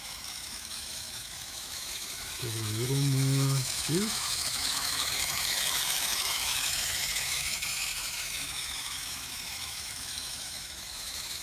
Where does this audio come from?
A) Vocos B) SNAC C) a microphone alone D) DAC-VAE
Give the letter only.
D